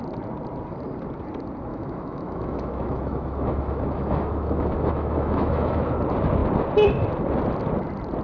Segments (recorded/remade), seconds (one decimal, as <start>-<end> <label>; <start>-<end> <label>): 0.0-1.7 recorded; 1.7-5.8 remade; 5.8-8.2 recorded